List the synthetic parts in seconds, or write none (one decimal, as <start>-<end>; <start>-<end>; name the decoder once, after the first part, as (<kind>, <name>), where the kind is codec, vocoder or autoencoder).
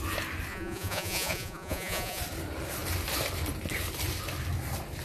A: 0.5-2.2 (vocoder, Vocos)